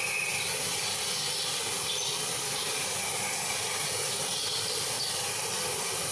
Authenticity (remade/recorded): recorded